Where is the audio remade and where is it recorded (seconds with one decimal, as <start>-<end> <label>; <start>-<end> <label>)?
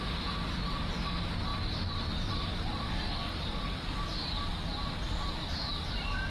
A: 0.0-1.5 recorded; 1.5-3.1 remade; 3.1-5.4 recorded; 5.4-6.3 remade